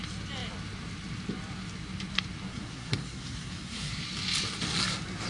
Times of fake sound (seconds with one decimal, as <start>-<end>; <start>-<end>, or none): 2.5-4.0